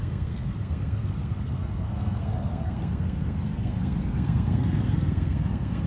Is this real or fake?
fake